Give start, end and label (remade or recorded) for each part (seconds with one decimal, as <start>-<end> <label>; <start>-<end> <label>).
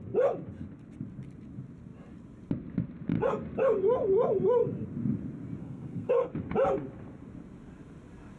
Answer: 0.0-5.6 recorded; 5.6-6.3 remade; 6.3-8.4 recorded